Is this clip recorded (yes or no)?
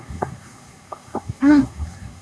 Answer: no